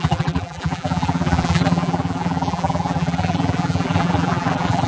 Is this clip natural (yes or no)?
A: no